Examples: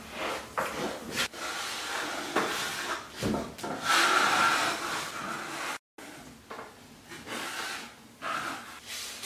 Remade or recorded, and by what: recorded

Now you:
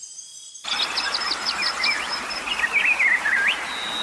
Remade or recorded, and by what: recorded